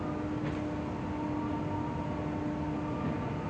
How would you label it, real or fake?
real